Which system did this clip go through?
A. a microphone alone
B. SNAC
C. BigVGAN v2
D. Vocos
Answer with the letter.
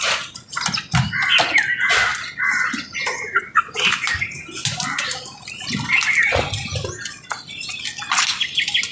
A